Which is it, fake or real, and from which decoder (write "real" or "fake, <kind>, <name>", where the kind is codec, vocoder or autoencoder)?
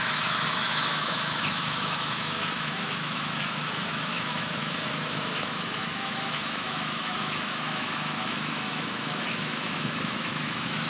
fake, autoencoder, DAC-VAE